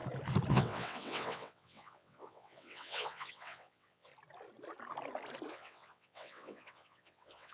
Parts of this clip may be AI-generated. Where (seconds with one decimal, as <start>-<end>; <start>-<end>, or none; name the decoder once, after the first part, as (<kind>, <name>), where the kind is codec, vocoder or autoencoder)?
0.5-4.1 (vocoder, WaveNeXt); 5.5-7.5